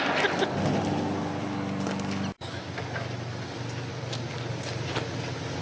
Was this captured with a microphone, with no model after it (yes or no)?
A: yes